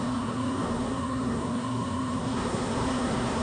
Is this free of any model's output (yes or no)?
no